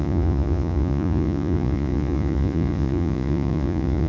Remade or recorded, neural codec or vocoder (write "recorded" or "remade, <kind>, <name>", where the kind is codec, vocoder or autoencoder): remade, vocoder, Vocos